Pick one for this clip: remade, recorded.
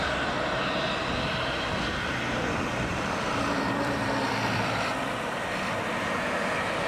remade